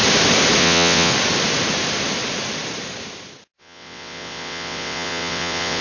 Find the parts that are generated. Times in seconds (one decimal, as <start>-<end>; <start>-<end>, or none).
0.6-1.1; 3.6-5.8